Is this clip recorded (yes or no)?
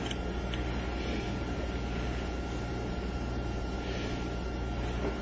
yes